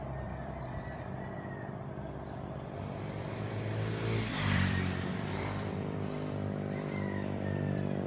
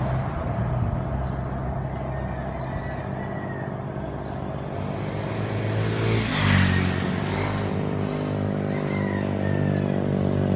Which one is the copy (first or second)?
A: first